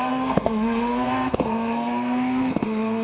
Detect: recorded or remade remade